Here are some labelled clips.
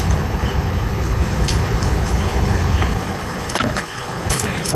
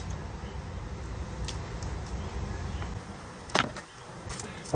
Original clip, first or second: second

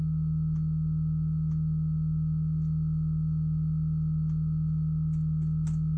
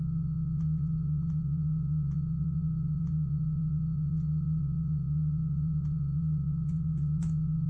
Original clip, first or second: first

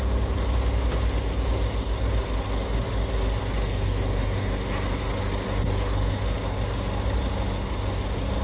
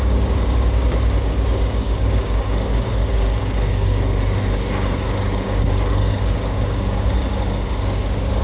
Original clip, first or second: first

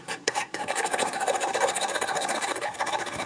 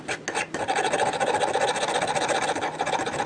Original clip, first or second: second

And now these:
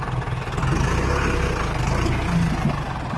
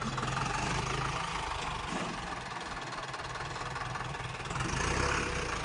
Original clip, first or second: first